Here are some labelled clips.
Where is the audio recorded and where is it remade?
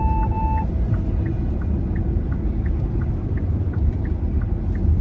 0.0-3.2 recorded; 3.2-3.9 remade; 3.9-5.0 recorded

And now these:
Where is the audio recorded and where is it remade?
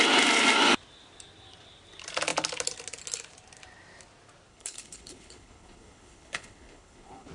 0.0-4.5 recorded; 4.5-7.3 remade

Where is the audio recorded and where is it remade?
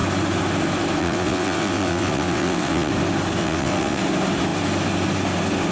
0.0-1.0 recorded; 1.0-2.9 remade; 2.9-3.4 recorded; 3.4-4.0 remade; 4.0-5.7 recorded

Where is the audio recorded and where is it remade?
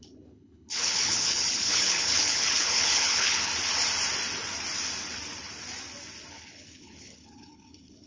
0.0-3.5 remade; 3.5-6.3 recorded; 6.3-8.1 remade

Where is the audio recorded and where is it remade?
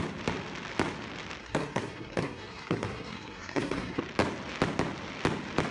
0.0-1.4 recorded; 1.4-4.0 remade; 4.0-5.7 recorded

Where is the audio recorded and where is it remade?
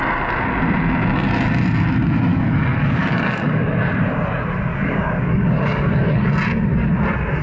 0.0-2.3 recorded; 2.3-3.6 remade; 3.6-4.7 recorded; 4.7-6.3 remade; 6.3-7.4 recorded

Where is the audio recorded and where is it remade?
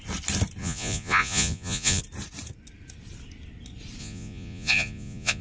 0.0-0.6 recorded; 0.6-2.0 remade; 2.0-4.0 recorded; 4.0-5.4 remade